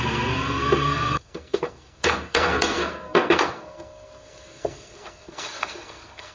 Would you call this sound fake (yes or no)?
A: yes